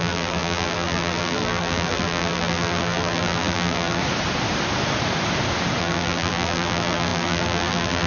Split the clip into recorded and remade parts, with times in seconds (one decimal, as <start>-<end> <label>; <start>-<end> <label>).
0.0-4.0 remade; 4.0-5.8 recorded; 5.8-8.1 remade